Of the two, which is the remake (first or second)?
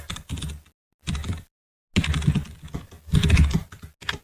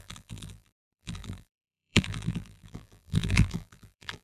second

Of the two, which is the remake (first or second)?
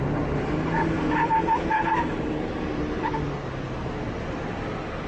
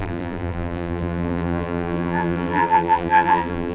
second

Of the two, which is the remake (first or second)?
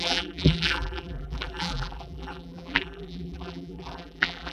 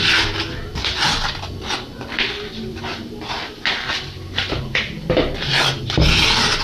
first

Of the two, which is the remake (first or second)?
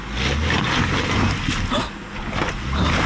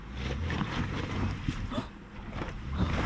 second